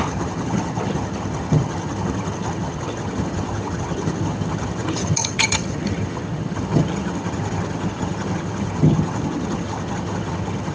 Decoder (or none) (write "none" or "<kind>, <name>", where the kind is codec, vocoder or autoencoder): vocoder, HiFi-GAN